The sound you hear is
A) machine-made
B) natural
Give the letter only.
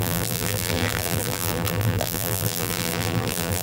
A